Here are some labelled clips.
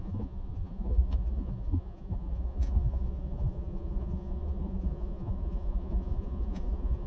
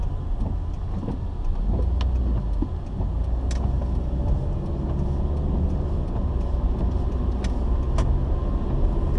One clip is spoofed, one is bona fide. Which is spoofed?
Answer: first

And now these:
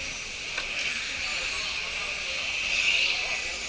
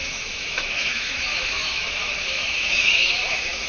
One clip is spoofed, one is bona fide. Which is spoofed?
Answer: second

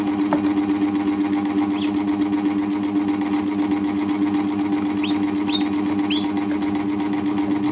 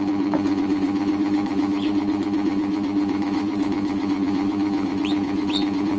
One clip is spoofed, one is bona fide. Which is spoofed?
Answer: second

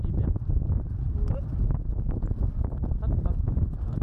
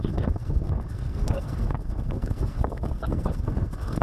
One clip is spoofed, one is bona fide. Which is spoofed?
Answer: second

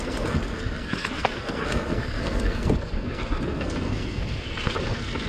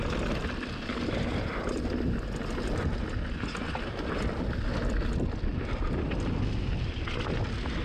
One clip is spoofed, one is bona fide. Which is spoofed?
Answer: first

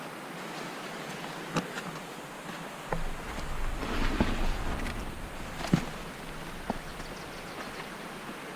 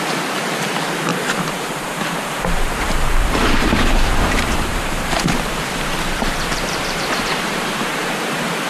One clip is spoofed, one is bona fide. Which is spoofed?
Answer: second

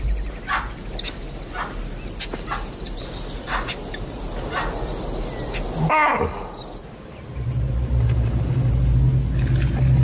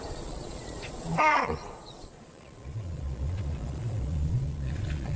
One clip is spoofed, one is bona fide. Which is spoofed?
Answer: second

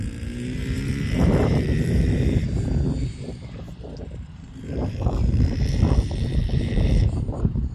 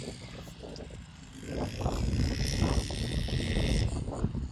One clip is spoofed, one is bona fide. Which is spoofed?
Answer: first